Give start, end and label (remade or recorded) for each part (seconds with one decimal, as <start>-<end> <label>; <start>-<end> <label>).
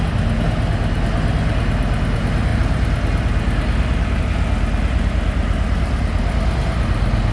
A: 0.0-7.3 recorded